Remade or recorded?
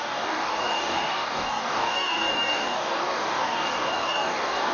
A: remade